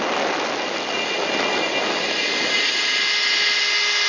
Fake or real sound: real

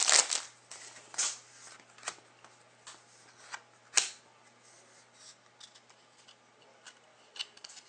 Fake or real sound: real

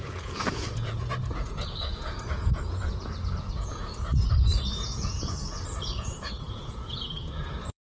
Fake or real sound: fake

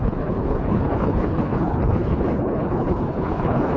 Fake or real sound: fake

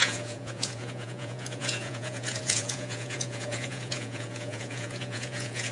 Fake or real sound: fake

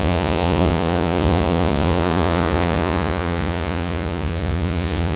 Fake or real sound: fake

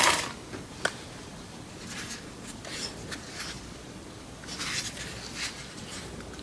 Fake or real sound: real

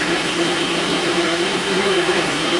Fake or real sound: fake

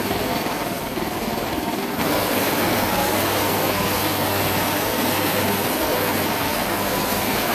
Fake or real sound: fake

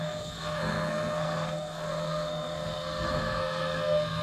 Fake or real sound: fake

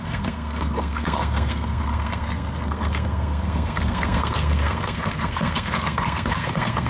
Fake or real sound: fake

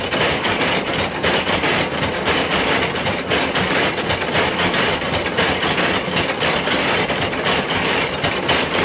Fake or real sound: real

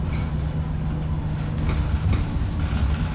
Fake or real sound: real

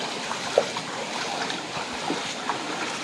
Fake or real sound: fake